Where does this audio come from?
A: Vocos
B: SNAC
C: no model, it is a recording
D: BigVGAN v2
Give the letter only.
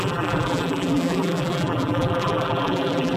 D